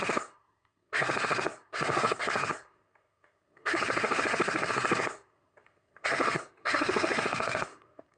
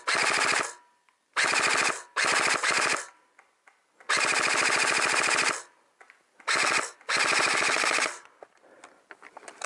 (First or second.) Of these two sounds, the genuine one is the second